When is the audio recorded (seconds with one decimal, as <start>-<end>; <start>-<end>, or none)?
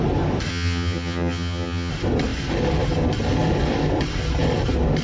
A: 0.0-0.5; 1.9-5.0